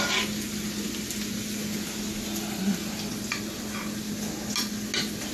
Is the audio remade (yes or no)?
no